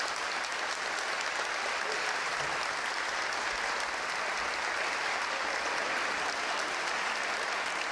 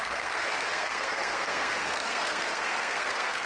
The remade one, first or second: second